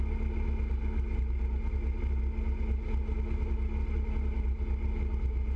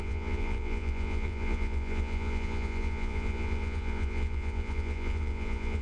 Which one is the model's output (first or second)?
second